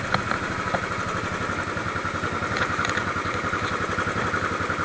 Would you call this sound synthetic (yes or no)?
no